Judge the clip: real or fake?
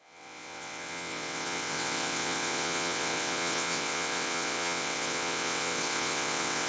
fake